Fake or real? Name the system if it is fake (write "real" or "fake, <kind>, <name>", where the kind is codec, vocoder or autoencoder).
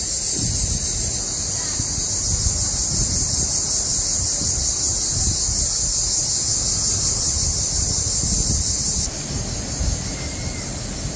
real